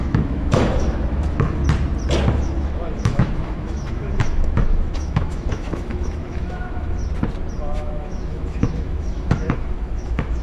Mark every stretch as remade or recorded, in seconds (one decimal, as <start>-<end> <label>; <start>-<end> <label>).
0.0-1.6 remade; 1.6-2.3 recorded; 2.3-7.0 remade; 7.0-7.6 recorded; 7.6-10.4 remade